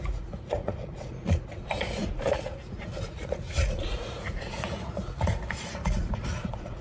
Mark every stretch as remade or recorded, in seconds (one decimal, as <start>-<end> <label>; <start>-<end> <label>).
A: 0.0-6.8 remade